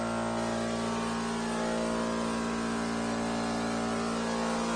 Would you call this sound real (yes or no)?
yes